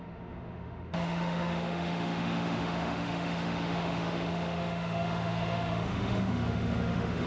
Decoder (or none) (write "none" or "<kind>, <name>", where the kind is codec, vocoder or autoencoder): autoencoder, DAC-VAE